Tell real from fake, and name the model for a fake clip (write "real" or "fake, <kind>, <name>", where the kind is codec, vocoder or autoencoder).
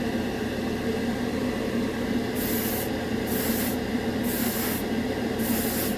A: real